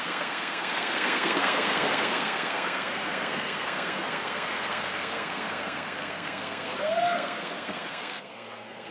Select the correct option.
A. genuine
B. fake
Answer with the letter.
B